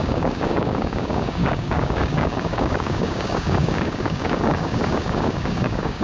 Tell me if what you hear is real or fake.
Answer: fake